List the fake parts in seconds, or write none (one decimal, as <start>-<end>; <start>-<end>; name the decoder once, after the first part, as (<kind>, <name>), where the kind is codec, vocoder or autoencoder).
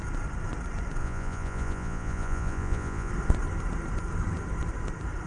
1.0-3.1 (vocoder, Vocos)